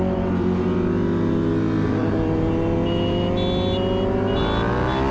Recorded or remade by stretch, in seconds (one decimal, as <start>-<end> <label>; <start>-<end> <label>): 0.0-5.1 recorded